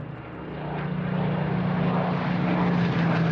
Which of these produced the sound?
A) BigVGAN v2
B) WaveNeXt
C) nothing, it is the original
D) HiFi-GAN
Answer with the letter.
C